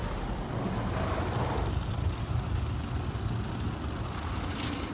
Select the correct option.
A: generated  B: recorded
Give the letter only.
B